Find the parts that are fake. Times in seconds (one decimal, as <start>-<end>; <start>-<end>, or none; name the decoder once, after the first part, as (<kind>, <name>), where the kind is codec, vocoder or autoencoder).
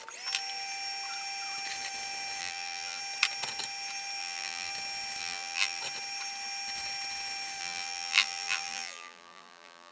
2.4-3.0 (vocoder, BigVGAN v2); 4.2-4.7; 5.2-5.8; 7.6-9.9